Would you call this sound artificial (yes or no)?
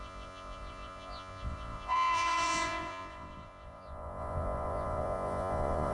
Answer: yes